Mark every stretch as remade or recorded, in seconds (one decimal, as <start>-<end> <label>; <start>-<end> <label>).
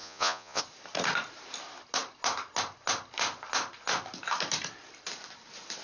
0.0-0.6 remade; 0.6-5.8 recorded